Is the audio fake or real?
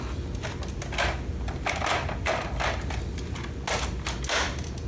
real